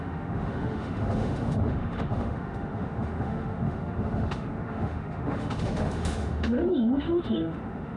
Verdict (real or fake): fake